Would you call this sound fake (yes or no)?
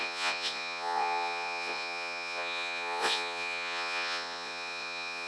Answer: yes